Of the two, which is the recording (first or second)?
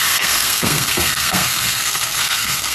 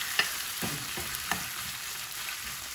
second